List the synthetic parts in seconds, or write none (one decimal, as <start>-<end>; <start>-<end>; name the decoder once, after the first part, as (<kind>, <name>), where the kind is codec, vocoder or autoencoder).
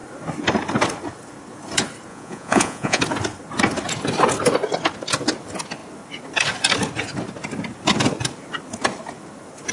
2.1-3.0 (vocoder, Vocos)